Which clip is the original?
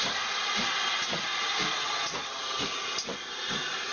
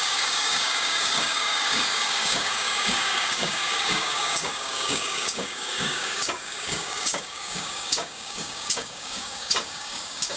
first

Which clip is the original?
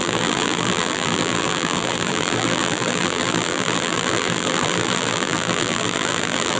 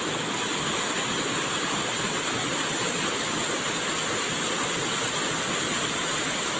second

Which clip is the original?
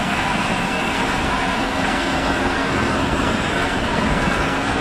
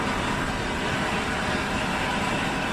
second